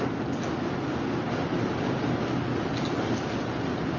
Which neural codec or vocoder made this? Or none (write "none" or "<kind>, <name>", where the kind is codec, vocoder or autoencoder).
none